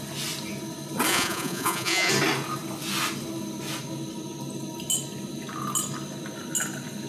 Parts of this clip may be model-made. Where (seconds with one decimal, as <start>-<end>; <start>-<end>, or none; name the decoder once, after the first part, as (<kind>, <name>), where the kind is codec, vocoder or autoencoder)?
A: 1.1-2.1 (vocoder, Vocos)